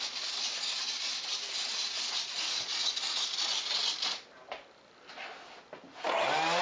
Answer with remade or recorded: recorded